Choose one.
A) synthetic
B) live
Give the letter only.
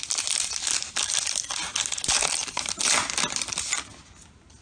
B